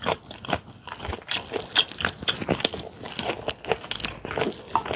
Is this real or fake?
real